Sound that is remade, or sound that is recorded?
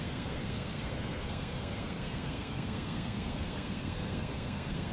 remade